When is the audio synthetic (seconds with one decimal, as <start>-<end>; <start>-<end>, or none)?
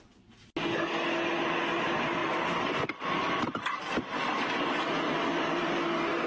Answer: 2.2-5.7